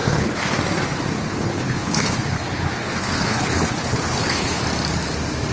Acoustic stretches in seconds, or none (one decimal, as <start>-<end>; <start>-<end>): 0.6-1.3; 4.6-5.5